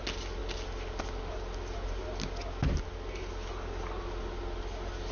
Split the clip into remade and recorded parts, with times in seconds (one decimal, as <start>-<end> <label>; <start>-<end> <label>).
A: 0.0-5.1 recorded